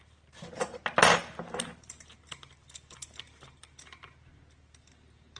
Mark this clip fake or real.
fake